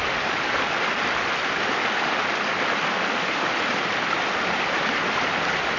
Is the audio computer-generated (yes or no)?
no